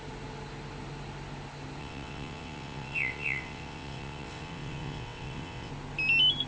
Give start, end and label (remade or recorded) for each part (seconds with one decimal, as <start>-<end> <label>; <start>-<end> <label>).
0.0-1.8 recorded; 1.8-5.7 remade; 5.7-6.5 recorded